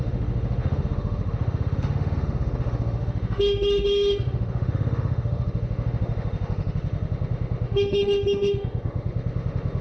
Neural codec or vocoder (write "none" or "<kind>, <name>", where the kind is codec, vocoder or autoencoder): autoencoder, DAC-VAE